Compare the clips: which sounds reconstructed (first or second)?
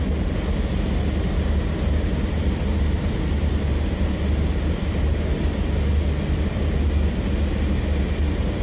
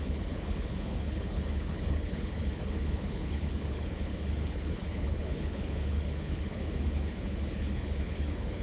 second